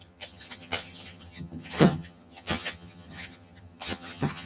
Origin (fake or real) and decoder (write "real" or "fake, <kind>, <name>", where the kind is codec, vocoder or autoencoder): fake, vocoder, HiFi-GAN